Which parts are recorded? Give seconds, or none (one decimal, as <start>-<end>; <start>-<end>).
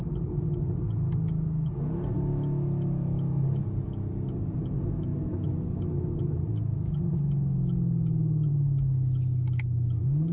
0.0-10.3